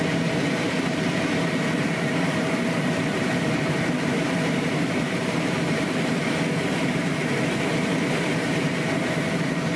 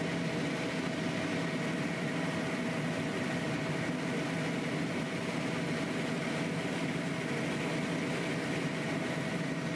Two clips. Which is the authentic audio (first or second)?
second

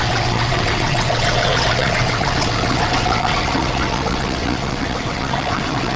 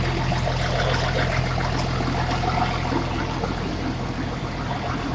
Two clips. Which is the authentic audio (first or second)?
second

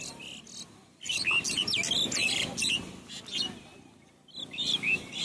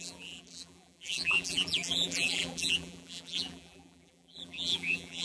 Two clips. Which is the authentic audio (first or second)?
first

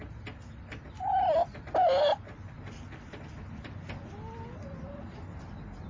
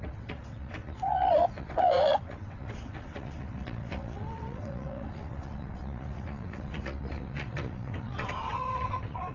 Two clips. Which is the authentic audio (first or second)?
first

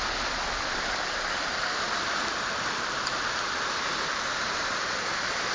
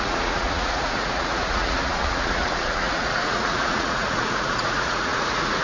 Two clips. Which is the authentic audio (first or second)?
first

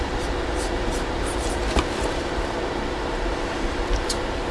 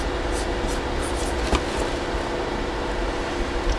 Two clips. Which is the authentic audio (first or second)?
second